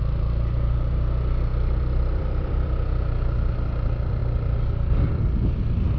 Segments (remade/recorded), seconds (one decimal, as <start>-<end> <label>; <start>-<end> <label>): 0.0-1.5 recorded; 1.5-3.7 remade; 3.7-6.0 recorded